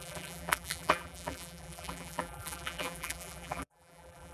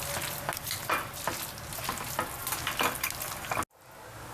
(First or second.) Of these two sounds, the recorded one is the second